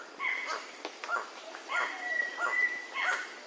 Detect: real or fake real